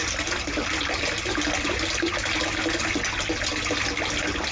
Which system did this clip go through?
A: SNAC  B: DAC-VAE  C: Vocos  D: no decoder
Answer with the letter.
D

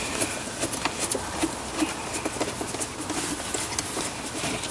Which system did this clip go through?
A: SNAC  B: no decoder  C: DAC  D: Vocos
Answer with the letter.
B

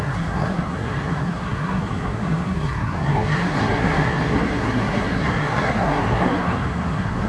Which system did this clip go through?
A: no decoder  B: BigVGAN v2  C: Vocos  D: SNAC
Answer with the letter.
D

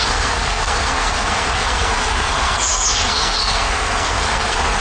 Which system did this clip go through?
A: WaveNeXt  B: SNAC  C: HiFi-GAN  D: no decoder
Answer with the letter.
B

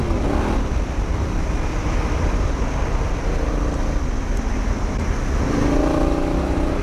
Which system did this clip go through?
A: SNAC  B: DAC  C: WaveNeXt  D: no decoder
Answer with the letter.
D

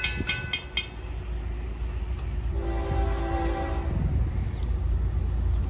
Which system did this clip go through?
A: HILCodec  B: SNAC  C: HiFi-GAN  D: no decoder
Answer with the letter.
D